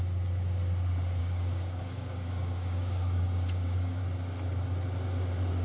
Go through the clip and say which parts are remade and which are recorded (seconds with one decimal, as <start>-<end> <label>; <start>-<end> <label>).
0.0-1.2 recorded; 1.2-4.0 remade; 4.0-5.6 recorded